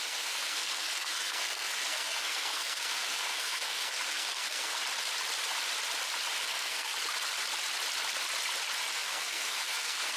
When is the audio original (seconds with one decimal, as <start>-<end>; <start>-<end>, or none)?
4.8-6.4; 6.9-8.9